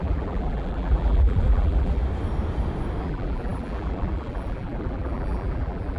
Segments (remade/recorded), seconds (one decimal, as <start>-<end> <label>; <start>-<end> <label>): 0.0-2.0 remade; 2.0-3.0 recorded; 3.0-6.0 remade